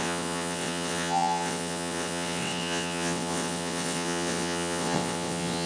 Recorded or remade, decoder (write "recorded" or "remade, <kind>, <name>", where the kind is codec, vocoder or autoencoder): remade, vocoder, WaveNeXt